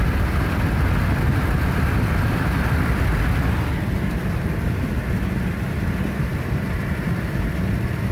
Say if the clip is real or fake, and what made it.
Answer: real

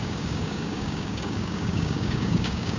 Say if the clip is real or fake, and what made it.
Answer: fake, codec, DAC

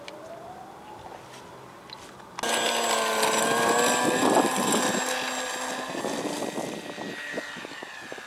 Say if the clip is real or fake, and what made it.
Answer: real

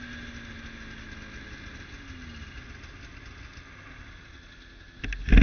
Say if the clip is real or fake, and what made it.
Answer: real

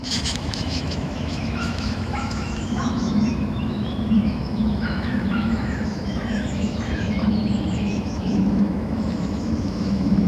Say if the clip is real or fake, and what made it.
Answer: fake, autoencoder, DAC-VAE